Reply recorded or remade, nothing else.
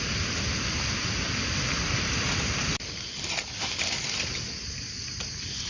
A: recorded